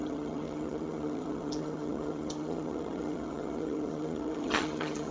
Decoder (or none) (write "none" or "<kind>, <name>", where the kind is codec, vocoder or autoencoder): vocoder, HiFi-GAN